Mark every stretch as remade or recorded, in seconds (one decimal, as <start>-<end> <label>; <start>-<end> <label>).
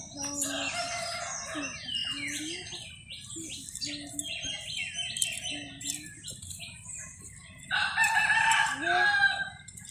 0.0-9.9 recorded